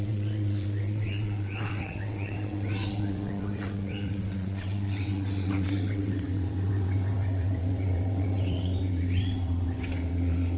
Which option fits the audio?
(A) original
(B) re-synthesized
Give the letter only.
B